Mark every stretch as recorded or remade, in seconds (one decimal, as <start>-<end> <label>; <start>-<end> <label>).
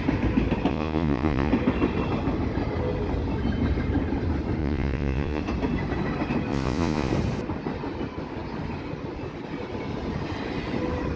0.0-0.7 recorded; 0.7-1.5 remade; 1.5-4.6 recorded; 4.6-5.4 remade; 5.4-6.5 recorded; 6.5-7.1 remade; 7.1-11.2 recorded